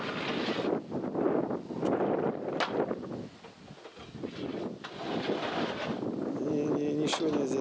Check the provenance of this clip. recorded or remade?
recorded